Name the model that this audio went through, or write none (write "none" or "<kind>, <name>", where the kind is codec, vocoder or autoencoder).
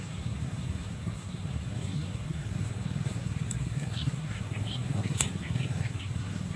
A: codec, SNAC